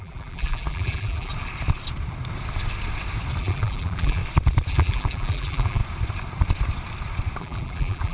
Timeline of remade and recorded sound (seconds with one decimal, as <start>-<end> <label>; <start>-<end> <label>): 0.0-1.3 remade; 1.3-3.4 recorded; 3.4-4.2 remade; 4.2-4.7 recorded; 4.7-5.8 remade; 5.8-7.4 recorded; 7.4-8.1 remade